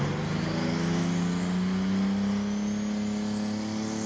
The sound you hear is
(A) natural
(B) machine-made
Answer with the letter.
A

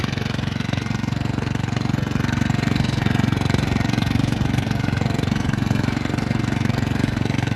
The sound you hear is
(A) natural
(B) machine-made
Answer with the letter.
B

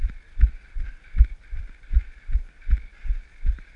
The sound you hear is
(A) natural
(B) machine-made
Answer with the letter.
A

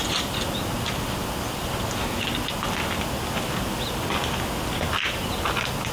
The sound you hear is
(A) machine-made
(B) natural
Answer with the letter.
B